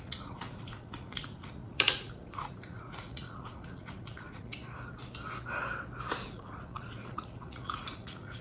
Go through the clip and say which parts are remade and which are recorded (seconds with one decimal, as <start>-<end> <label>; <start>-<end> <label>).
0.0-4.5 remade; 4.5-6.2 recorded; 6.2-8.4 remade